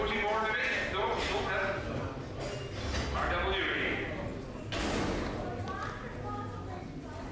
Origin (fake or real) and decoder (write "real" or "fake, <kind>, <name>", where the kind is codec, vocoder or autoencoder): real